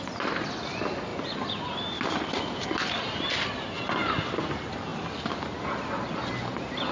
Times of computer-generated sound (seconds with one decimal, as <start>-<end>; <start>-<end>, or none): none